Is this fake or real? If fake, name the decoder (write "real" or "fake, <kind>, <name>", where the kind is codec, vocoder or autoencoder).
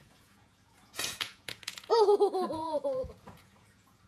fake, vocoder, Vocos